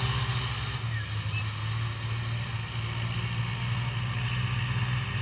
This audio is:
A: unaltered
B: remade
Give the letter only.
A